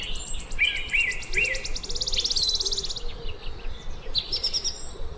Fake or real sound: real